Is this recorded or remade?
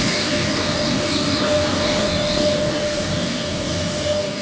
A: remade